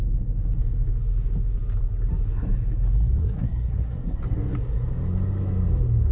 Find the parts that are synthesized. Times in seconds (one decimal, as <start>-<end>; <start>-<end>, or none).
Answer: 3.2-4.2